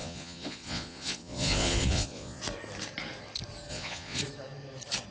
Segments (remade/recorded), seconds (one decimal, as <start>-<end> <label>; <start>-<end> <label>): 0.0-2.4 remade; 2.4-3.7 recorded; 3.7-4.2 remade; 4.2-5.1 recorded

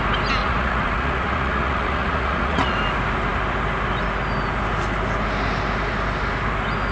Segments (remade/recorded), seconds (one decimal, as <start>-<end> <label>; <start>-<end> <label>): 0.0-0.4 recorded; 0.4-2.7 remade; 2.7-6.9 recorded

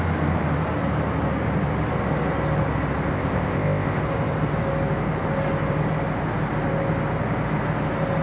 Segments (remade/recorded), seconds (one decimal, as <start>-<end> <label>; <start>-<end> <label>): 0.0-3.1 recorded; 3.1-4.0 remade; 4.0-8.2 recorded

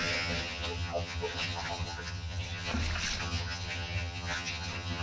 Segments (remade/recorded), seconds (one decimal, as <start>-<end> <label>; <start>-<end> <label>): 0.0-2.7 remade; 2.7-3.2 recorded; 3.2-5.0 remade

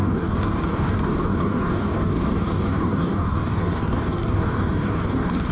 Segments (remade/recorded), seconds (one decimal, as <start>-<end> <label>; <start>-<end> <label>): 0.0-5.5 remade